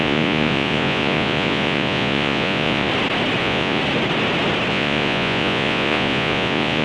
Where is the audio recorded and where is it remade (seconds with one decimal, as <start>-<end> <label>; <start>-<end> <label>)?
0.0-2.9 remade; 2.9-3.4 recorded; 3.4-3.8 remade; 3.8-4.7 recorded; 4.7-6.8 remade